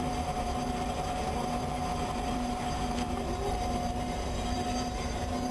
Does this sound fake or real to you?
fake